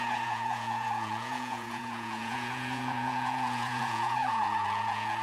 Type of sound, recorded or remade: remade